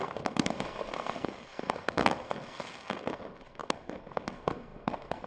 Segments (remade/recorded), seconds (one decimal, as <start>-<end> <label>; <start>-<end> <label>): 0.0-5.3 remade

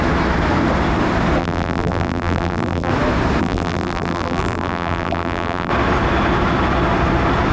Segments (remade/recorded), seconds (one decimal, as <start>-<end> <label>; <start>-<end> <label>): 0.0-1.4 recorded; 1.4-2.9 remade; 2.9-3.4 recorded; 3.4-5.7 remade; 5.7-7.5 recorded

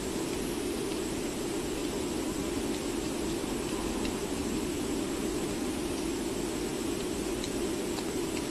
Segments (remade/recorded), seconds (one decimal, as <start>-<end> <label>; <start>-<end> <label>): 0.0-8.5 recorded

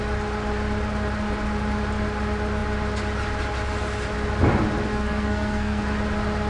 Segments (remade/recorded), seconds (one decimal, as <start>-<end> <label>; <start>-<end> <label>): 0.0-4.9 recorded; 4.9-5.8 remade; 5.8-6.5 recorded